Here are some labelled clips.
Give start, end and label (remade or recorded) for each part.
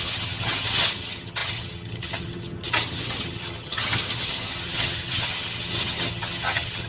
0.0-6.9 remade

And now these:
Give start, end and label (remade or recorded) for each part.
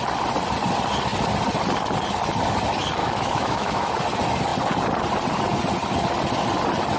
0.0-3.0 recorded; 3.0-3.9 remade; 3.9-7.0 recorded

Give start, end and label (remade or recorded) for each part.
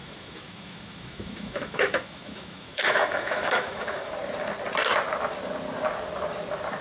0.0-4.1 remade; 4.1-6.8 recorded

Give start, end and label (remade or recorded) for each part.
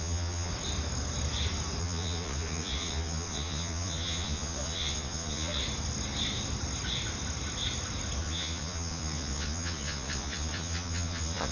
0.0-0.5 remade; 0.5-1.8 recorded; 1.8-5.6 remade; 5.6-8.2 recorded; 8.2-11.5 remade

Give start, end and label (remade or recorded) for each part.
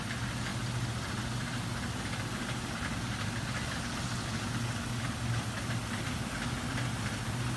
0.0-7.6 recorded